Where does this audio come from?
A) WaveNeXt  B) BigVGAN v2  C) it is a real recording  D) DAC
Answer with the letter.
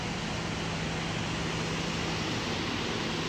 C